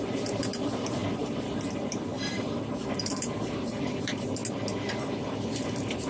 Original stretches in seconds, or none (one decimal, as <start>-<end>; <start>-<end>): 4.4-5.1